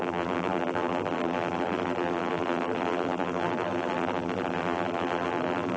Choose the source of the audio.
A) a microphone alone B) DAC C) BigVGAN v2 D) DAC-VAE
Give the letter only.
C